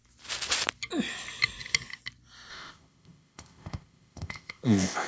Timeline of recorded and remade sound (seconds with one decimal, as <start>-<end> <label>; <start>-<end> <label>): 0.0-2.5 recorded; 2.5-5.1 remade